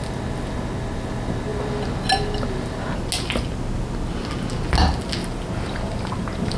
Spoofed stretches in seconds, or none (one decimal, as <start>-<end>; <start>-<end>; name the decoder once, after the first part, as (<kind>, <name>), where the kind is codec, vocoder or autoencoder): 5.2-6.6 (vocoder, BigVGAN v2)